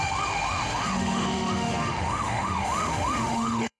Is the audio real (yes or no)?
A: no